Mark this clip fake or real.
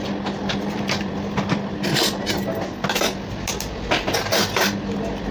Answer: real